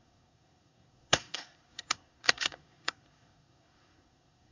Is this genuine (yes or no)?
no